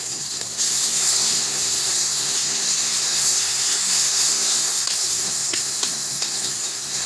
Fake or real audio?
fake